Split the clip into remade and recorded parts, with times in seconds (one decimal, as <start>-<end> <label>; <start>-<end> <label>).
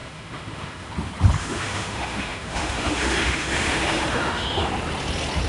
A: 0.0-0.9 remade; 0.9-1.4 recorded; 1.4-4.7 remade; 4.7-5.5 recorded